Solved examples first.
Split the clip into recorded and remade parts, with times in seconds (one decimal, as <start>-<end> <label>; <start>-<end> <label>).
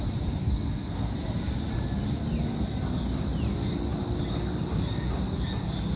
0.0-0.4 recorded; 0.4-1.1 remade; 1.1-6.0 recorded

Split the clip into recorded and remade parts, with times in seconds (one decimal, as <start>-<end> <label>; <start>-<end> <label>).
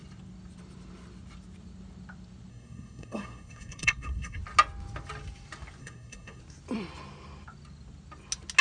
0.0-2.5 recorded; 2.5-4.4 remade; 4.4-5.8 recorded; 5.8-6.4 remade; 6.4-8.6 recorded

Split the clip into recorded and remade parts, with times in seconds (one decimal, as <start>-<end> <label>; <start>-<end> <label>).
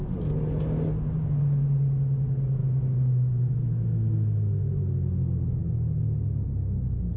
0.0-7.2 recorded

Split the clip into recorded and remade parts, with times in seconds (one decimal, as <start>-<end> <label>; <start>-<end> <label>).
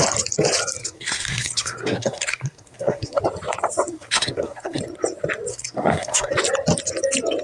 0.0-0.8 recorded; 0.8-3.2 remade; 3.2-3.9 recorded; 3.9-4.8 remade; 4.8-5.5 recorded; 5.5-6.3 remade; 6.3-7.4 recorded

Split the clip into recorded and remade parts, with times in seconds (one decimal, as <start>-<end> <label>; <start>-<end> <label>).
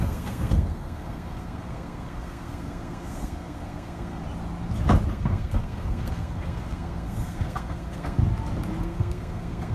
0.0-4.2 remade; 4.2-5.1 recorded; 5.1-8.2 remade; 8.2-8.8 recorded; 8.8-9.7 remade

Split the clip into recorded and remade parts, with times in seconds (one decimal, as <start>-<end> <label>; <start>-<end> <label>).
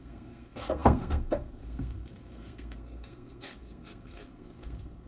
0.0-5.1 remade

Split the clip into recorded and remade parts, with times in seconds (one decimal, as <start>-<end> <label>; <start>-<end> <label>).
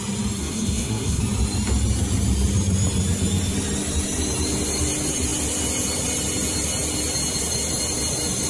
0.0-0.4 recorded; 0.4-1.2 remade; 1.2-8.5 recorded